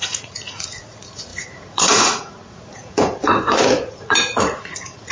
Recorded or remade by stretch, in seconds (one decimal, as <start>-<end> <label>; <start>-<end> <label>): 0.0-5.1 remade